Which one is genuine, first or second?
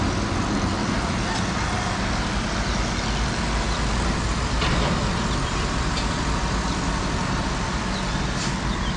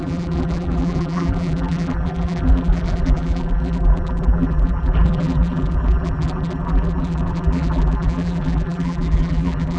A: first